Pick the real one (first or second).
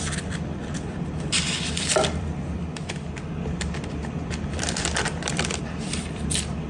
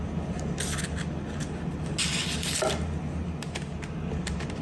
second